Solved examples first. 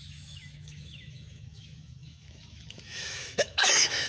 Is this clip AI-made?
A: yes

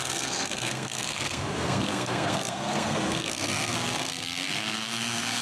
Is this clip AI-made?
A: yes